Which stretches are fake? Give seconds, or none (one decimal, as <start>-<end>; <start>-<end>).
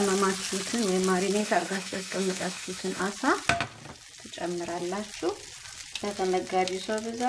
1.4-3.0